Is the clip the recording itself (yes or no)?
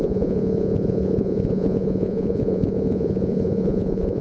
no